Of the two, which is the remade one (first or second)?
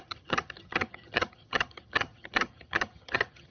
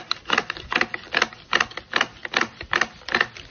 first